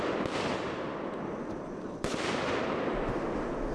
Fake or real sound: real